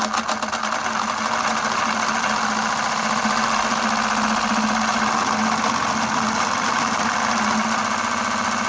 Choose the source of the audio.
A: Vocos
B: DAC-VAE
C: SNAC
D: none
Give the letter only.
D